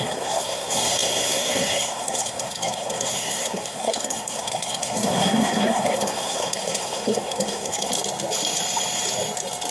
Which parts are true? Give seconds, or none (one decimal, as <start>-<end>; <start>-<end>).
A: 7.9-9.7